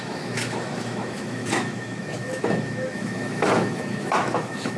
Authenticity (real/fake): fake